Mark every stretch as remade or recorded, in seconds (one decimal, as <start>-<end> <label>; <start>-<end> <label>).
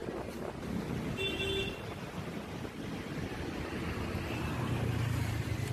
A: 0.0-5.7 recorded